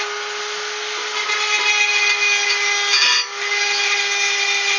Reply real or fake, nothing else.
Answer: real